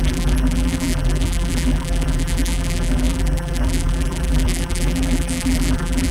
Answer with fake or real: fake